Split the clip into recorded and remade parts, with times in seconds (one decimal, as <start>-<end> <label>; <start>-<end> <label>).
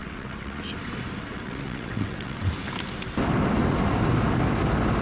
0.0-0.6 remade; 0.6-1.2 recorded; 1.2-2.5 remade; 2.5-5.0 recorded